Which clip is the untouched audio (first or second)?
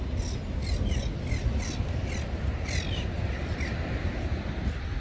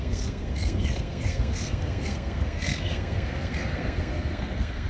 first